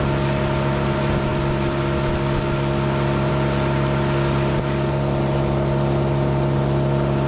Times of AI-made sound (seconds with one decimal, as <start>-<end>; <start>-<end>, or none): none